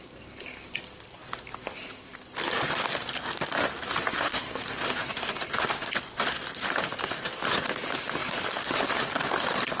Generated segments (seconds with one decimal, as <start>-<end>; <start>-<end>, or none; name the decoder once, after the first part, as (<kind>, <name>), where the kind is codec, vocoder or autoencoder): 4.1-4.6 (codec, SNAC)